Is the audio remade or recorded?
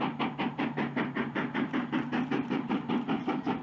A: remade